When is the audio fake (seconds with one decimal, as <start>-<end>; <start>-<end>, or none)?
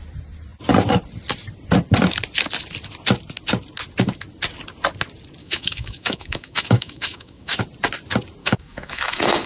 5.4-7.6; 8.4-9.5